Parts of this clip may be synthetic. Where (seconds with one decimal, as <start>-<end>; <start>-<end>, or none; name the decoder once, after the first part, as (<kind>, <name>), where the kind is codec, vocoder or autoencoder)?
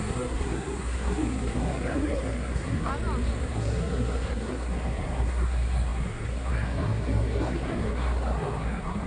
0.0-2.9 (codec, SNAC); 3.4-9.1